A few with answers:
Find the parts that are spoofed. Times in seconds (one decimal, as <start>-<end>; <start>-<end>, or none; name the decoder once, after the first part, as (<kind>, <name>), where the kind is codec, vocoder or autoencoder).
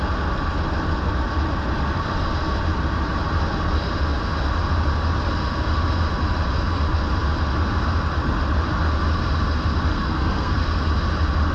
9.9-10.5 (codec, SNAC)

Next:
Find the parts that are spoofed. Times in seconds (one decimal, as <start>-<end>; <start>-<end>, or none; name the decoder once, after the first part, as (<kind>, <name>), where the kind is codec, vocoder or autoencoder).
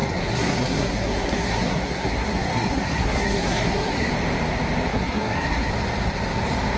0.0-4.1 (codec, SNAC); 4.9-5.7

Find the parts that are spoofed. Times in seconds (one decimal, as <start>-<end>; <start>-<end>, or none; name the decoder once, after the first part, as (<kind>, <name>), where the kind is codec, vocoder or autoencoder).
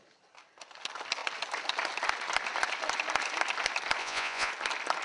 4.0-4.5 (vocoder, Vocos)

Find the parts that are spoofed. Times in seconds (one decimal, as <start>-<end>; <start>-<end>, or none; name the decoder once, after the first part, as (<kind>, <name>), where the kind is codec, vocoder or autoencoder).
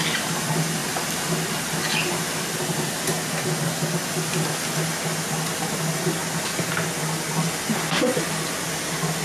none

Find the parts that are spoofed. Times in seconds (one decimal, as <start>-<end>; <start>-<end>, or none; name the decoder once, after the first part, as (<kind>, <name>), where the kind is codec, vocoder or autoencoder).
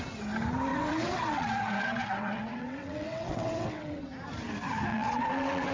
0.7-4.1 (vocoder, WaveNeXt); 4.9-5.7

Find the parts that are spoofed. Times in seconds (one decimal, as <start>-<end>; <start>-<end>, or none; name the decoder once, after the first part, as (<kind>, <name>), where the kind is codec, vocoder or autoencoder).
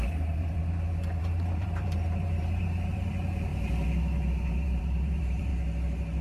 0.0-0.6 (vocoder, BigVGAN v2); 1.2-5.5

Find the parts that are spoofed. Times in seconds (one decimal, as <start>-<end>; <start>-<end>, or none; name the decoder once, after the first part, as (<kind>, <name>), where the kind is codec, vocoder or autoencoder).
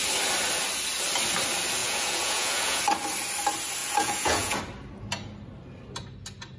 1.8-2.8 (vocoder, Vocos); 3.8-4.6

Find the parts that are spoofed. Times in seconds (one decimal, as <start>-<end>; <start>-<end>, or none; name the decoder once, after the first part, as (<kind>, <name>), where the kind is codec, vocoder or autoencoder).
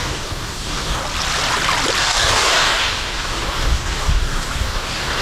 0.0-1.0 (codec, DAC); 2.0-5.2